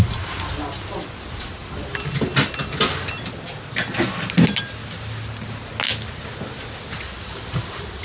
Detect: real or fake real